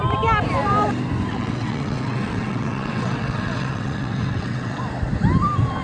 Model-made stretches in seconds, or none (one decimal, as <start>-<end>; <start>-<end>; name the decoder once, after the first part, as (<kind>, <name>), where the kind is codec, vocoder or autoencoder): 1.3-4.8 (vocoder, WaveNeXt)